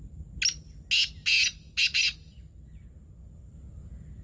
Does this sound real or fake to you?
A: real